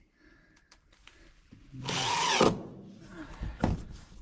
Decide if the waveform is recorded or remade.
recorded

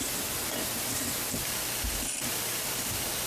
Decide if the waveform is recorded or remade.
recorded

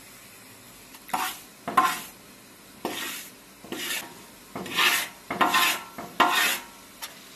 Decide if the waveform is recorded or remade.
recorded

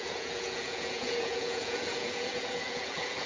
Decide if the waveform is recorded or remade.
remade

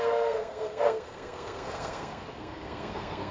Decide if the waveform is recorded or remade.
remade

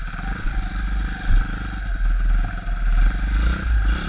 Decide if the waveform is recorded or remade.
recorded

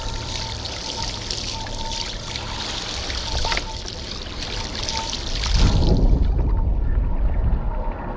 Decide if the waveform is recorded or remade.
recorded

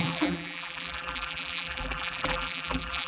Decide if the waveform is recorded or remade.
remade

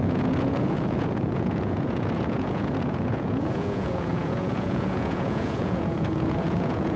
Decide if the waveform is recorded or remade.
remade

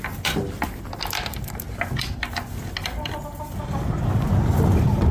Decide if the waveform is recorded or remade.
recorded